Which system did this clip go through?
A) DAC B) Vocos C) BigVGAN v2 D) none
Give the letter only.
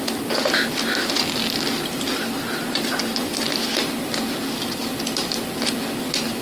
D